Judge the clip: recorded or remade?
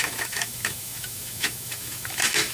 remade